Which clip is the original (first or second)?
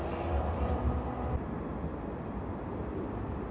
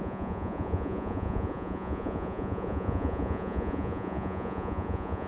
first